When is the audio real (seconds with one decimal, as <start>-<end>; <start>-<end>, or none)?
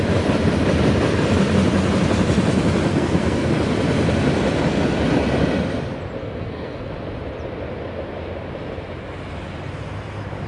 0.0-2.9; 3.5-6.2; 6.9-10.5